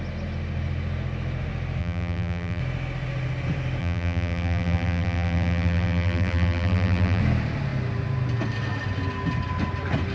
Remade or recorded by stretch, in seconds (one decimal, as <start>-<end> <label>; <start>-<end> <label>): 0.0-1.8 recorded; 1.8-2.6 remade; 2.6-3.8 recorded; 3.8-7.2 remade; 7.2-10.1 recorded